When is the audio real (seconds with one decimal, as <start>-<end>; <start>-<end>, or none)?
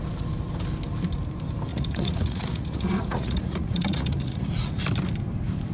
0.0-1.7; 4.8-5.7